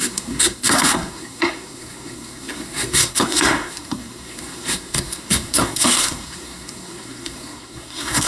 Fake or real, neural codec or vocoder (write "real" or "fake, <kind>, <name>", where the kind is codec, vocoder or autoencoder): fake, codec, SNAC